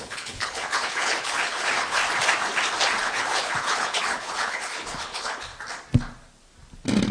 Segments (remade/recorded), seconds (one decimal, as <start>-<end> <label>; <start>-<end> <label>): 0.0-2.0 remade; 2.0-3.0 recorded; 3.0-5.5 remade; 5.5-7.1 recorded